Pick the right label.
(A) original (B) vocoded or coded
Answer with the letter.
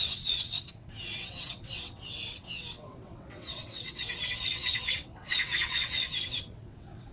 B